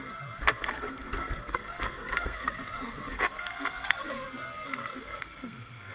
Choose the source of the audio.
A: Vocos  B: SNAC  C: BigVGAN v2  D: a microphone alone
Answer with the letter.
B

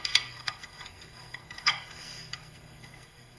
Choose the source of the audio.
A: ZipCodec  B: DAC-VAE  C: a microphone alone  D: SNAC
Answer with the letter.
D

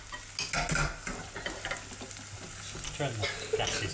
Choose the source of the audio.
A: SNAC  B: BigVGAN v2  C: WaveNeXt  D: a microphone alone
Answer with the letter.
D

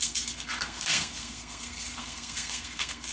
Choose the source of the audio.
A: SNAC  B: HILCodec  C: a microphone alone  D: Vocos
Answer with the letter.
A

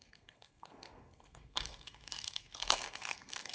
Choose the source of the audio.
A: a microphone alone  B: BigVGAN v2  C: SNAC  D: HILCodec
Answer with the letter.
C